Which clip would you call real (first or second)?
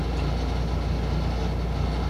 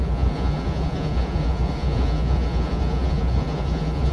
first